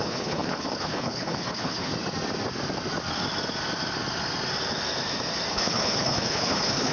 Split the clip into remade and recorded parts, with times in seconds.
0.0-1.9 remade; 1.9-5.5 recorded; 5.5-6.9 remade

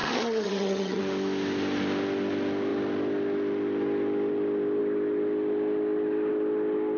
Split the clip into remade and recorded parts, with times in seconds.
0.0-1.0 remade; 1.0-7.0 recorded

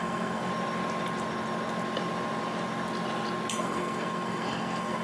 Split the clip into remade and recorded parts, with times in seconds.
0.0-0.5 remade; 0.5-3.5 recorded; 3.5-5.0 remade

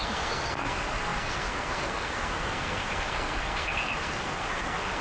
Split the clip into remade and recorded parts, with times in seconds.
0.0-5.0 remade

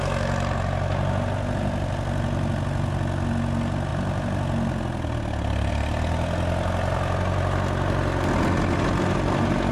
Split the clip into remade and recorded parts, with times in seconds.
0.0-9.7 recorded

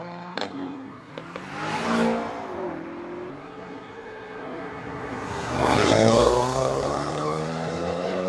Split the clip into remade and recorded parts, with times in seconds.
0.0-1.1 remade; 1.1-3.3 recorded; 3.3-8.3 remade

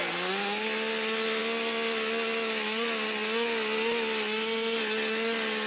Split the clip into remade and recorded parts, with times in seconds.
0.0-5.7 recorded